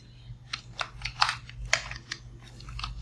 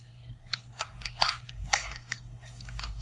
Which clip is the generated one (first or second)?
second